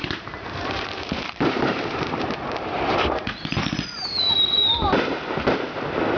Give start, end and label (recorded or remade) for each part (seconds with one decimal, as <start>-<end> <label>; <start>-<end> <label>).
0.0-3.3 remade; 3.3-6.2 recorded